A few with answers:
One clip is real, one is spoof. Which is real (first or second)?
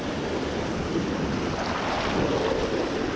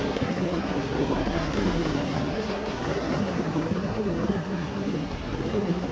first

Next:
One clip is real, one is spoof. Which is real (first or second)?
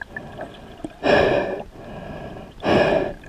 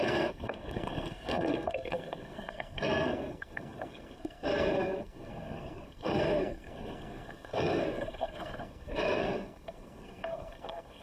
first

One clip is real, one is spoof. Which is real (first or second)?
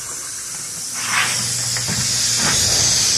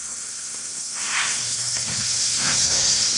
first